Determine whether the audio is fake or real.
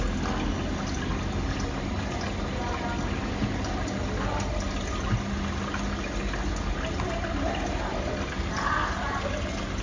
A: real